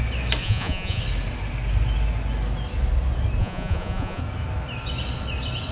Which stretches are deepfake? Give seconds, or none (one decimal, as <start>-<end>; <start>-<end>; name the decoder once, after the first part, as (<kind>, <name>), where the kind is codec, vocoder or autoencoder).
0.4-1.0 (vocoder, Vocos); 3.4-4.2